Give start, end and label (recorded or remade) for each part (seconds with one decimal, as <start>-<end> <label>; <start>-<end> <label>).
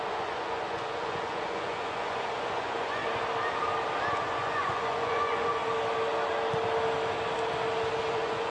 0.0-3.0 remade; 3.0-4.1 recorded; 4.1-5.6 remade; 5.6-8.1 recorded; 8.1-8.5 remade